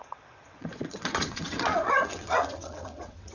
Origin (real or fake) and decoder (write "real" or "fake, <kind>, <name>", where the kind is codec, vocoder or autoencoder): fake, vocoder, WaveNeXt